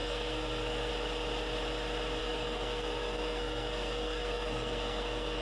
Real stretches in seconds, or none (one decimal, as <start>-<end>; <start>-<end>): 0.9-2.2